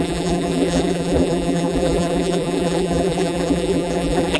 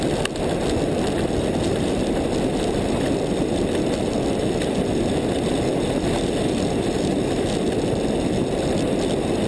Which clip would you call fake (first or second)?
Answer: first